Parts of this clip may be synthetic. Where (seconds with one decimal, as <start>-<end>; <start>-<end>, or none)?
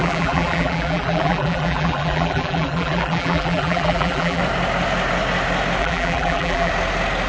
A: 0.0-4.4; 5.8-6.7